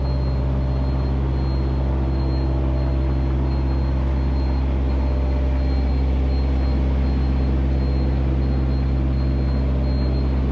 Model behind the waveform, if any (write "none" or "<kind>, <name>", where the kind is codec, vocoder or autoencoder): none